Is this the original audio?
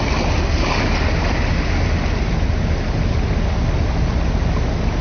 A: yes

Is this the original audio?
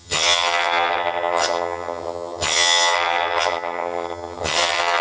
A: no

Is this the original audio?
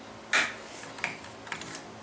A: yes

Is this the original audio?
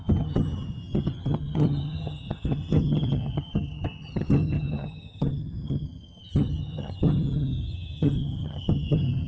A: no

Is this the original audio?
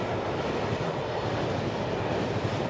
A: yes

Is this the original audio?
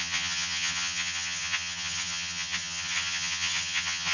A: no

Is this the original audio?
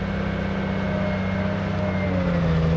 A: yes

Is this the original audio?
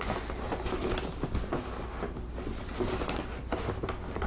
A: yes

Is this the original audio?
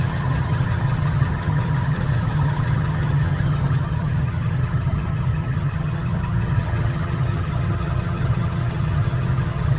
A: no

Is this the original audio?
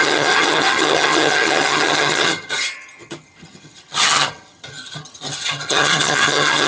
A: no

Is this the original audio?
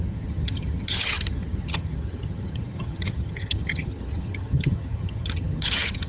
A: no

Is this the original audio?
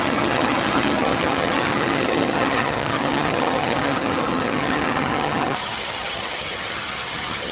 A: no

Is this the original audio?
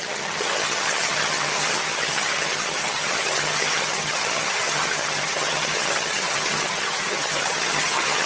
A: no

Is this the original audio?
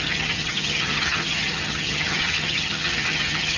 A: no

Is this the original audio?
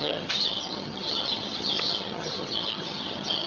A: no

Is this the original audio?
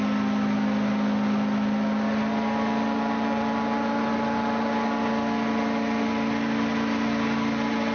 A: yes